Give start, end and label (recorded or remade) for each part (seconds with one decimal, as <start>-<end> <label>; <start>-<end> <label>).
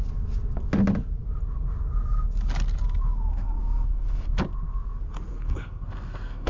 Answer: 0.0-3.3 recorded; 3.3-4.3 remade; 4.3-5.3 recorded; 5.3-6.5 remade